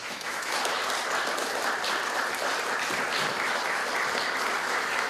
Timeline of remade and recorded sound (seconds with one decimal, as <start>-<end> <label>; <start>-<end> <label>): 0.0-0.8 remade; 0.8-3.3 recorded; 3.3-3.8 remade; 3.8-4.6 recorded; 4.6-5.1 remade